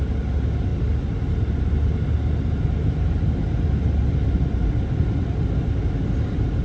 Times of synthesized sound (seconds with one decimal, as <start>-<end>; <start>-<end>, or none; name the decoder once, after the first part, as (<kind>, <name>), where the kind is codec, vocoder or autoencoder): none